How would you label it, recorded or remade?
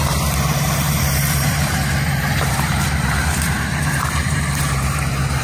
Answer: remade